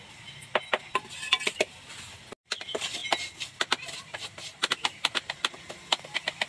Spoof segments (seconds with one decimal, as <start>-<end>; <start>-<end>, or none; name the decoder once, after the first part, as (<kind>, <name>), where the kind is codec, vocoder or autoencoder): none